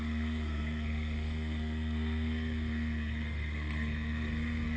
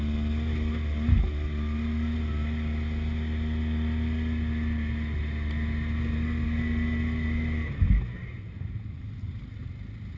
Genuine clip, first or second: second